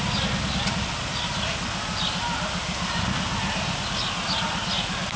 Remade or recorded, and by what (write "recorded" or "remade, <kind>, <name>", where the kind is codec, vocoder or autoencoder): recorded